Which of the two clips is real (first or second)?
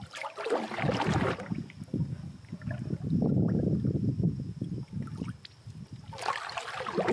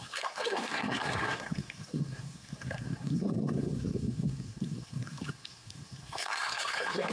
first